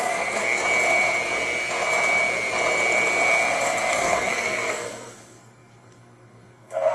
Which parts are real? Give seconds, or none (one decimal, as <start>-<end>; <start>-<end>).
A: 0.6-3.9